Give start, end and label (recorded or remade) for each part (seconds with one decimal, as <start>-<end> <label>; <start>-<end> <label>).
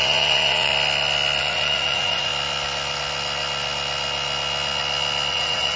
0.0-0.7 remade; 0.7-1.4 recorded; 1.4-2.3 remade; 2.3-5.3 recorded; 5.3-5.8 remade